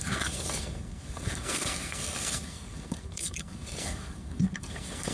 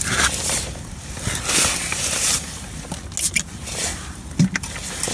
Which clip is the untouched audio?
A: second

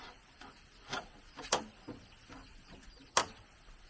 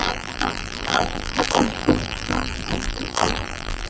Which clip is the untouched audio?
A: first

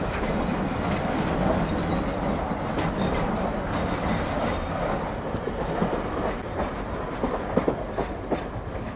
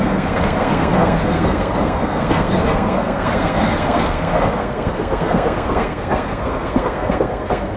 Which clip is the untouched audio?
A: first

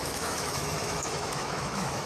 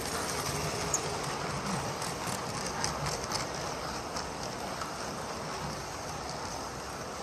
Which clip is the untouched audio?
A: second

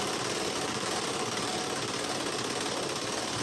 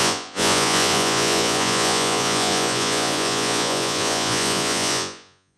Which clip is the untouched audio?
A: first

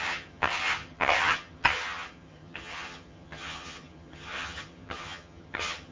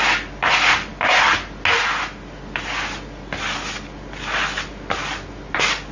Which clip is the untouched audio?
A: second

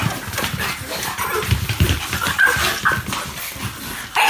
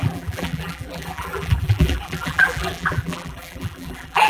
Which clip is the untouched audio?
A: first